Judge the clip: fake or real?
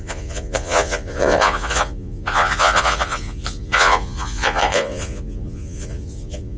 fake